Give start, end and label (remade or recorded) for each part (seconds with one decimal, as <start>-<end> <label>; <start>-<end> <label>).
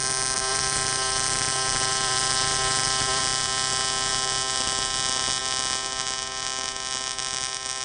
0.0-0.5 recorded; 0.5-3.2 remade; 3.2-7.8 recorded